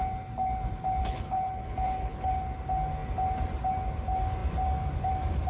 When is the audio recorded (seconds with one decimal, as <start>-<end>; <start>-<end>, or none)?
0.0-1.0; 2.3-5.5